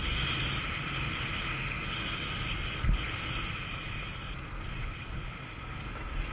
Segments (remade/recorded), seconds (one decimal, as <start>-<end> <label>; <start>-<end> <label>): 0.0-6.3 recorded

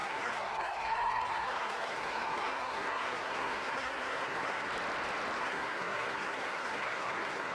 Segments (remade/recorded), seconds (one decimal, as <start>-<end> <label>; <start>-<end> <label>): 0.0-4.7 remade; 4.7-5.4 recorded; 5.4-7.5 remade

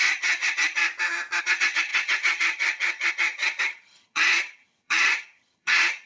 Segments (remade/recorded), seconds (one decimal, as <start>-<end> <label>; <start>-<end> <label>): 0.0-0.8 remade; 0.8-1.4 recorded; 1.4-6.1 remade

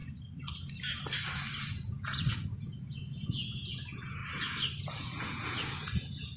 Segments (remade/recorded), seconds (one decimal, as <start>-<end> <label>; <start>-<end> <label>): 0.0-1.7 recorded; 1.7-4.2 remade; 4.2-4.8 recorded; 4.8-6.4 remade

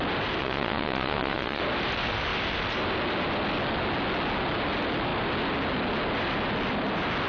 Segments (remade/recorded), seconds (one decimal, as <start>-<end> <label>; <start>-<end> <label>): 0.0-0.4 recorded; 0.4-1.6 remade; 1.6-7.3 recorded

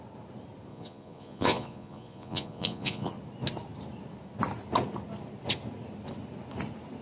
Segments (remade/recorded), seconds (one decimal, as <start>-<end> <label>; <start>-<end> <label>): 0.0-0.7 recorded; 0.7-3.1 remade; 3.1-7.0 recorded

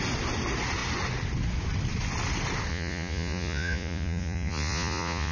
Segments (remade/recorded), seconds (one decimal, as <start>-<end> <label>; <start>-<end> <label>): 0.0-2.7 recorded; 2.7-5.3 remade